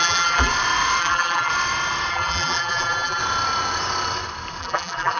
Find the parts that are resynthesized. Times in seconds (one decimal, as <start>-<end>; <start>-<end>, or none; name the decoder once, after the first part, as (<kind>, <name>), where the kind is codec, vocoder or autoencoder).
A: 0.0-0.5 (vocoder, BigVGAN v2); 1.0-1.5; 2.1-3.2; 4.6-5.2